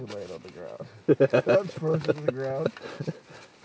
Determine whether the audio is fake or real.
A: real